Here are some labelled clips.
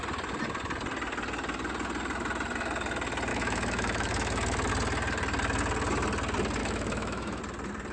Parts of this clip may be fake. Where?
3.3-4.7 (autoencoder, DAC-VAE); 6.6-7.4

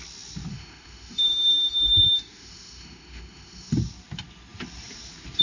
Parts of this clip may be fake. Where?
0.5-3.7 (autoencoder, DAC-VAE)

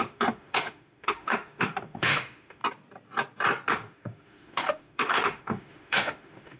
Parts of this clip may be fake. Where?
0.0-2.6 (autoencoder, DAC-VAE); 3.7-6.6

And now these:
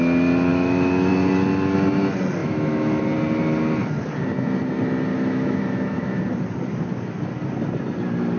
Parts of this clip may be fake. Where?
0.5-1.1 (autoencoder, DAC-VAE); 2.4-3.0; 5.1-6.2

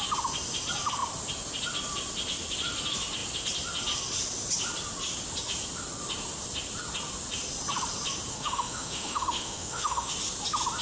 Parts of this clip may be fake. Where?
8.3-10.1 (autoencoder, DAC-VAE)

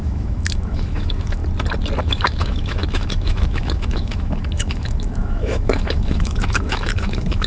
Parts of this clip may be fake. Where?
0.0-1.4 (autoencoder, DAC-VAE); 2.0-7.5

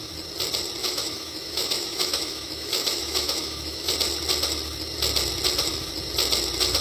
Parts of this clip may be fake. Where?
0.8-3.9 (autoencoder, DAC-VAE)

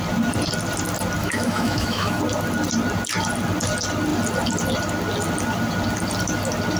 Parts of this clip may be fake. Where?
1.2-2.2 (autoencoder, DAC-VAE)